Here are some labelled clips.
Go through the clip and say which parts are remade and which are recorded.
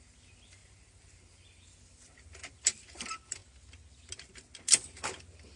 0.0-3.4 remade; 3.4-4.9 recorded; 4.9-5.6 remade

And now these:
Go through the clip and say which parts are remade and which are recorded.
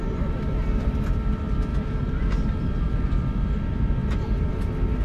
0.0-1.7 recorded; 1.7-3.4 remade; 3.4-4.0 recorded; 4.0-4.5 remade; 4.5-5.0 recorded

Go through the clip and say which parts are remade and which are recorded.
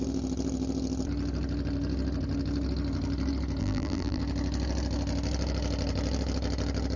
0.0-3.6 recorded; 3.6-4.2 remade; 4.2-7.0 recorded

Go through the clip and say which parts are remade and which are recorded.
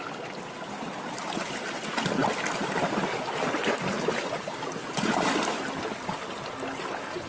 0.0-7.3 recorded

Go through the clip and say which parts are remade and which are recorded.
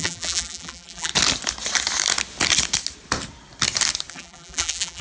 0.0-1.1 remade; 1.1-4.1 recorded; 4.1-5.0 remade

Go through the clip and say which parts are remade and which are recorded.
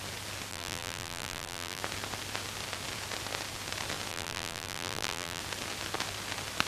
0.0-0.5 recorded; 0.5-1.8 remade; 1.8-4.1 recorded; 4.1-5.4 remade; 5.4-6.7 recorded